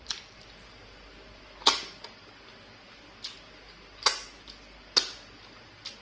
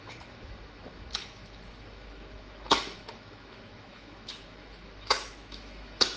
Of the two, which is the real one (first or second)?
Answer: first